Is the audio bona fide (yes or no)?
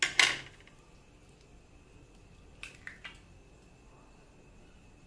yes